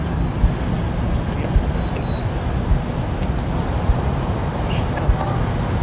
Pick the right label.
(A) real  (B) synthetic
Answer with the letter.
A